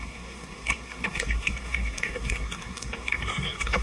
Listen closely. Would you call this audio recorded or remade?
remade